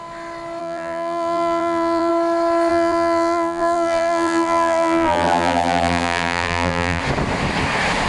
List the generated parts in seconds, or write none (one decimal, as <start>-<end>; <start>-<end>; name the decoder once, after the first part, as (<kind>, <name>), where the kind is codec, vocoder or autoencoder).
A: 0.6-2.1 (vocoder, BigVGAN v2); 2.7-7.0

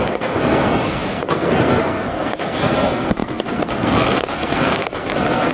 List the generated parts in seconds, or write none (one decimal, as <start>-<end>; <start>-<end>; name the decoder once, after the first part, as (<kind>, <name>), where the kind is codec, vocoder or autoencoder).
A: 0.0-5.5 (codec, SNAC)

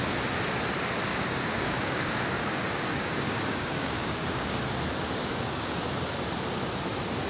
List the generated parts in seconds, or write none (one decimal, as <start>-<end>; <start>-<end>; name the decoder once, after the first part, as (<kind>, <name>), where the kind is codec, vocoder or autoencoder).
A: 1.1-4.6 (codec, DAC); 5.2-5.8

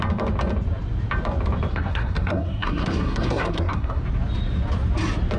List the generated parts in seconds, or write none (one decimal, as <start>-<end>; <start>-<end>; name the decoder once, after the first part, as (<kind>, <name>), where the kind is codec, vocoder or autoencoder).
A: 1.7-4.0 (codec, SNAC)